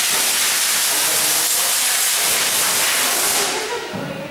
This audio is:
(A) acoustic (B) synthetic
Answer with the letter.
A